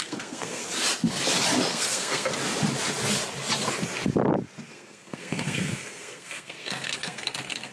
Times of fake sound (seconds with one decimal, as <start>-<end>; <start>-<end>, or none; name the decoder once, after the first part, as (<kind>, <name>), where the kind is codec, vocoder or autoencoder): 0.0-0.6 (codec, SNAC); 1.7-2.3; 4.7-7.7